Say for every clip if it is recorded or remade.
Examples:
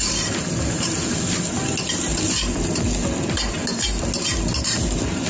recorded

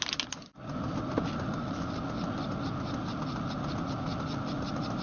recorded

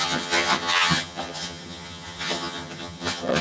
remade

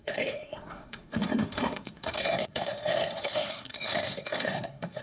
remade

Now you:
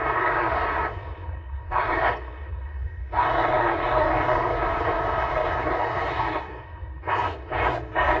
remade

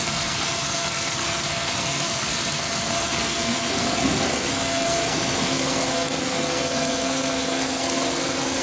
remade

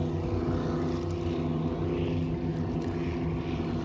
recorded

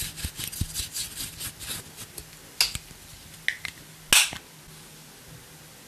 recorded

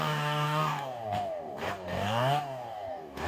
remade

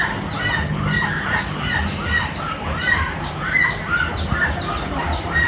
recorded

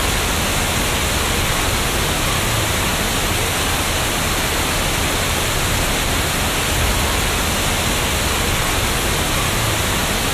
recorded